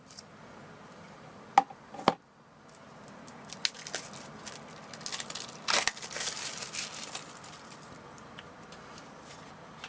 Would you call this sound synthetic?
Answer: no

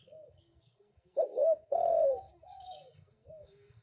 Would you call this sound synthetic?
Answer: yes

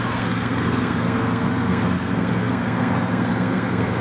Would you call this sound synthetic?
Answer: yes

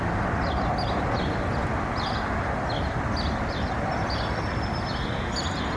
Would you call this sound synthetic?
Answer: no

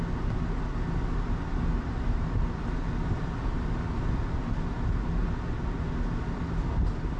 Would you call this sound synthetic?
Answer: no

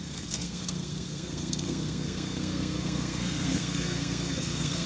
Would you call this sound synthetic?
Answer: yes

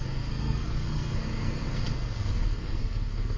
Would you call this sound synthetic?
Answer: yes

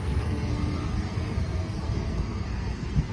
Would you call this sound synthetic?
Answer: yes